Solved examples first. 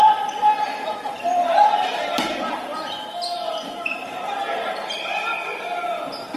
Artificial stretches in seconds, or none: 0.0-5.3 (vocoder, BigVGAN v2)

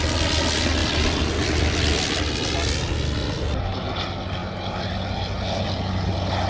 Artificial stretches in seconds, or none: 0.8-2.2 (vocoder, BigVGAN v2)

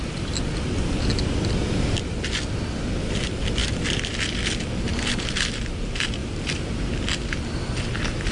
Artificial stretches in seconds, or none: 6.2-7.0 (vocoder, BigVGAN v2)

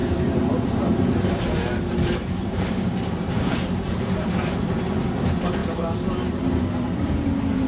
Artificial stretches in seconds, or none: 0.0-4.6 (vocoder, BigVGAN v2)

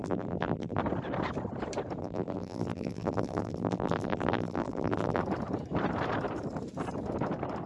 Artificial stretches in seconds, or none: 0.0-0.8 (vocoder, BigVGAN v2); 2.0-5.2

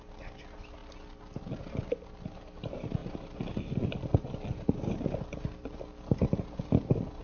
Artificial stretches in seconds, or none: none

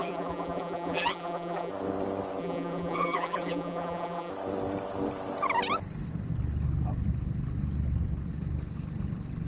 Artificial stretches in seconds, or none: 0.0-1.7 (vocoder, BigVGAN v2); 2.4-4.3